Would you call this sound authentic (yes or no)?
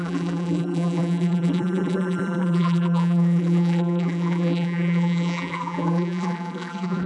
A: no